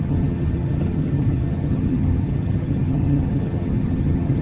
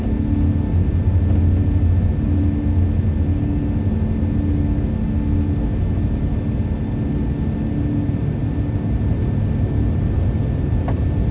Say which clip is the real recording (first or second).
second